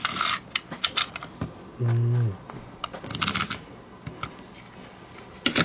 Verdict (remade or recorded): recorded